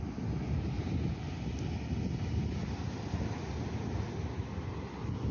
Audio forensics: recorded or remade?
recorded